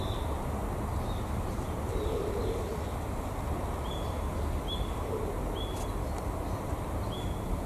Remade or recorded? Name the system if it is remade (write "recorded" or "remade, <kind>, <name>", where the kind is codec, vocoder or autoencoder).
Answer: recorded